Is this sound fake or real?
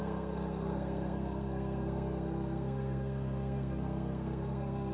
fake